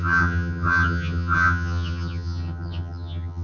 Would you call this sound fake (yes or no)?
yes